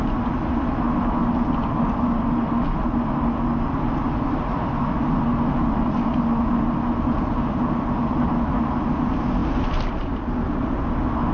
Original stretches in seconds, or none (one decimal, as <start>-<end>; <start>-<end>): 0.0-11.3